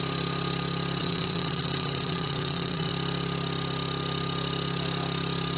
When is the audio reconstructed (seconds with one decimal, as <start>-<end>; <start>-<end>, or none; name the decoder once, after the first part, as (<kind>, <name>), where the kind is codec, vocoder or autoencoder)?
1.0-2.9 (vocoder, WaveNeXt)